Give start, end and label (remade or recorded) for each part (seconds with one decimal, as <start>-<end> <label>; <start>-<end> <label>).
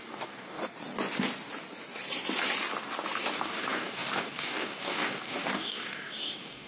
0.0-0.6 remade; 0.6-3.3 recorded; 3.3-6.7 remade